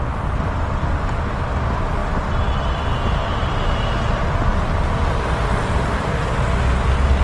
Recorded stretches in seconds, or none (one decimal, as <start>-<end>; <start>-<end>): 0.0-7.2